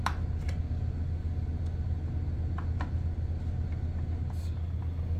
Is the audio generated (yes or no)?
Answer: no